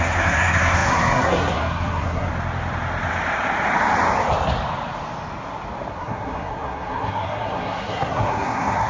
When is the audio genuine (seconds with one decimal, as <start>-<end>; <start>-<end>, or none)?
2.3-5.9